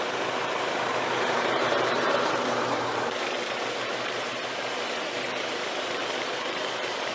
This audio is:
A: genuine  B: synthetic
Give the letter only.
B